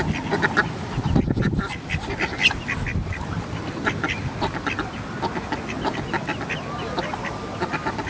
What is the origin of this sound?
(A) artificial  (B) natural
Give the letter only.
B